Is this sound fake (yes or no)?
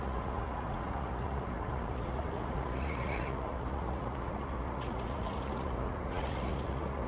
yes